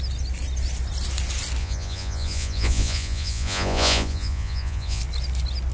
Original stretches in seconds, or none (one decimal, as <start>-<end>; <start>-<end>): 0.0-1.6; 5.0-5.7